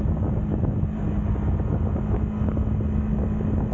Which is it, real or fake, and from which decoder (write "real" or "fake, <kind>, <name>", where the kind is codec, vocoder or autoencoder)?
real